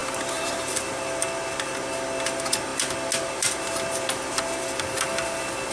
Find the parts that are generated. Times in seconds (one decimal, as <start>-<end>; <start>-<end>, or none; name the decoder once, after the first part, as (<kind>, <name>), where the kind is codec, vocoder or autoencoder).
0.0-1.1 (vocoder, BigVGAN v2)